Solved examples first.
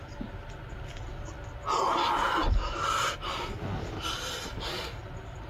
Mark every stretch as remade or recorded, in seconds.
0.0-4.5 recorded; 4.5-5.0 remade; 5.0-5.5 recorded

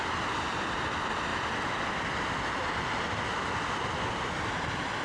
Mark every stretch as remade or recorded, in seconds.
0.0-5.0 recorded

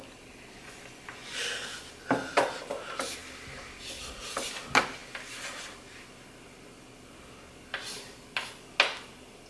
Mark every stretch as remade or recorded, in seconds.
0.0-0.6 recorded; 0.6-1.4 remade; 1.4-9.5 recorded

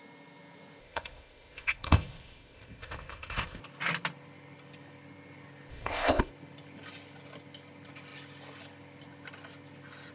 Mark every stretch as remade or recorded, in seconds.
0.0-0.8 recorded; 0.8-3.6 remade; 3.6-5.7 recorded; 5.7-6.3 remade; 6.3-10.1 recorded

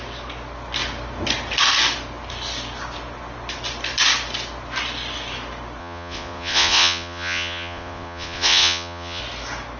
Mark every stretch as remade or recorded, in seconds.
0.0-5.8 recorded; 5.8-9.2 remade; 9.2-9.8 recorded

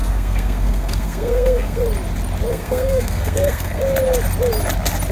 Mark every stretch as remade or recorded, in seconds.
0.0-1.8 remade; 1.8-2.5 recorded; 2.5-3.8 remade; 3.8-5.1 recorded